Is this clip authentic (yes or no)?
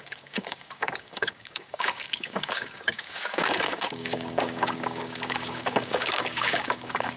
no